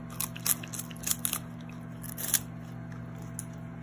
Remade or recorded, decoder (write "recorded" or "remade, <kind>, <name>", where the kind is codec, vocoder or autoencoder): recorded